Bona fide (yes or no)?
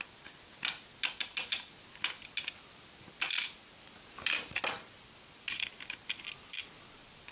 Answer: yes